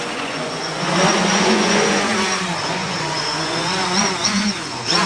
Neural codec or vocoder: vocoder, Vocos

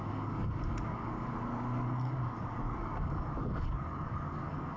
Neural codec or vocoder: codec, DAC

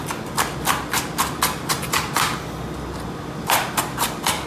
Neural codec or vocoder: none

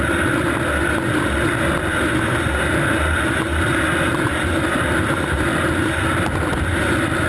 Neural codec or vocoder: none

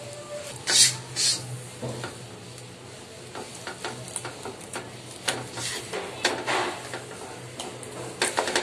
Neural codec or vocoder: none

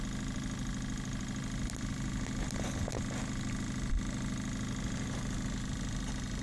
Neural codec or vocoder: none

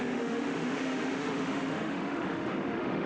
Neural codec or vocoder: autoencoder, DAC-VAE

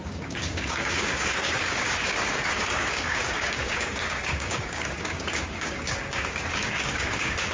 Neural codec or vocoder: codec, DAC